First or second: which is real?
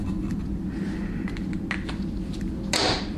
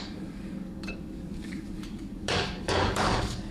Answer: first